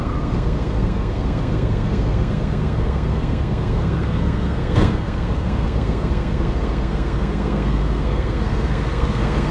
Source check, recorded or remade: remade